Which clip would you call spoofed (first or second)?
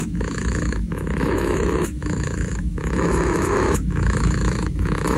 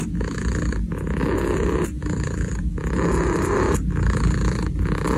first